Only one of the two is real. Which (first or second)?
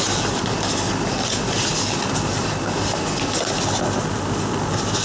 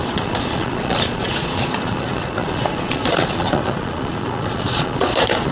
first